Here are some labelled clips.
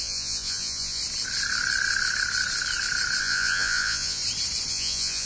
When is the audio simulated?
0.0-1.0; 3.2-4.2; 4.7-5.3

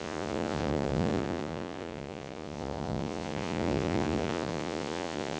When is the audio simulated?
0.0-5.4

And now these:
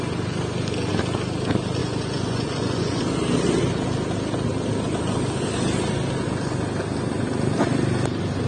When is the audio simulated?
1.8-3.0

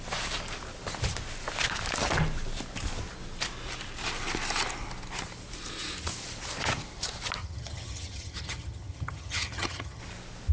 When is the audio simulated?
7.4-10.0

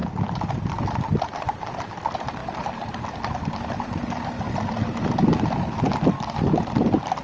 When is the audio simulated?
none

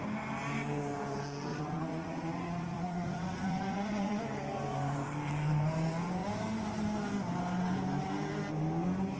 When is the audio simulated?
1.5-4.2

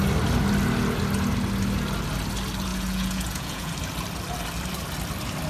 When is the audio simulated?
2.7-3.7

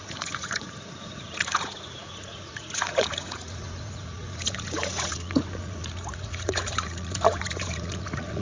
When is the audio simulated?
0.0-8.4